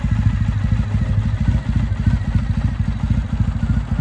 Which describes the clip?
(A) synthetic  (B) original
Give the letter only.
B